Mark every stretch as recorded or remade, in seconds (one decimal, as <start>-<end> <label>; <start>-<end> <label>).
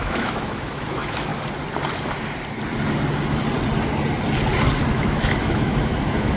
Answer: 0.0-1.3 remade; 1.3-4.9 recorded; 4.9-6.4 remade